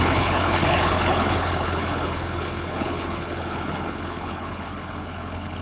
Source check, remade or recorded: remade